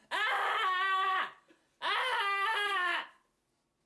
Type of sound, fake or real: real